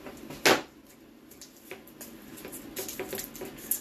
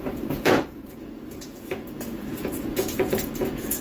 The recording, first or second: first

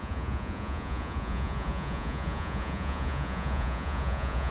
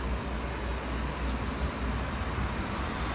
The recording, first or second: second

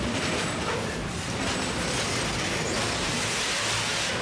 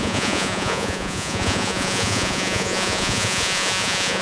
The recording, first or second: first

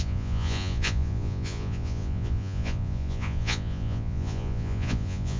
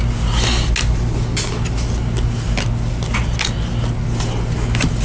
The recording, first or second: second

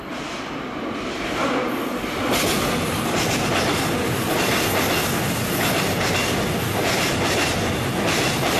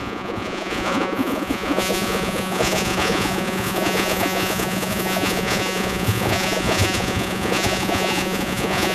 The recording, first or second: first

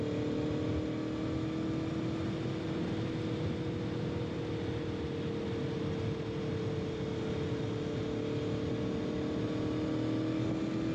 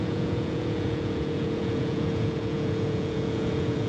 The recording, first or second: first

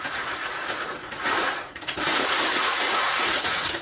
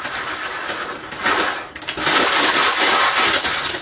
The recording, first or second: second